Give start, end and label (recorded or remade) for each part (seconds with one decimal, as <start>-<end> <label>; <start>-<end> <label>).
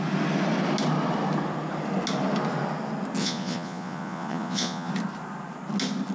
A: 0.0-3.2 recorded; 3.2-4.9 remade; 4.9-6.1 recorded